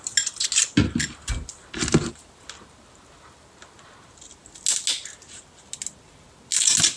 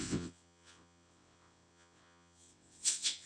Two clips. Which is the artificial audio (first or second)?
second